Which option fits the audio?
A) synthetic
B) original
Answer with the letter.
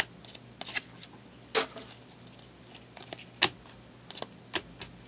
B